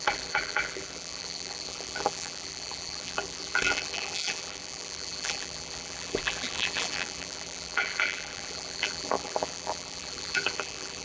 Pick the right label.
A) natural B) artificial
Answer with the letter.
B